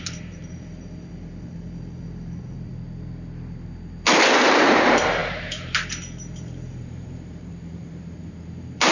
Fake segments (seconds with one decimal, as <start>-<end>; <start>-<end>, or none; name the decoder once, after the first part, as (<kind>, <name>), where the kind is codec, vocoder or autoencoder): 0.0-2.7 (vocoder, BigVGAN v2); 4.4-8.9